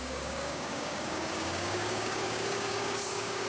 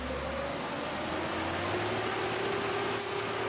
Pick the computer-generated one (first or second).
first